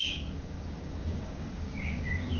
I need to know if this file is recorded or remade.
remade